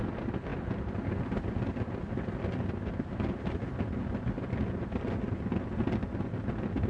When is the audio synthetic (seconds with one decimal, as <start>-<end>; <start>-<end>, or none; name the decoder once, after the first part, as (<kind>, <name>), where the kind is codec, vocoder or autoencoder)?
none